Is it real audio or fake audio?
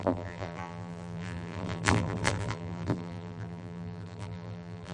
fake